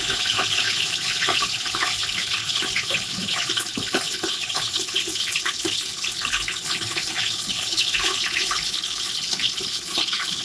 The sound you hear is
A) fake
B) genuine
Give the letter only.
A